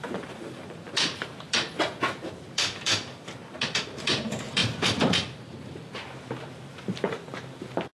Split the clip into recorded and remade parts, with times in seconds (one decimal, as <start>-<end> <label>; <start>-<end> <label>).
0.0-7.9 remade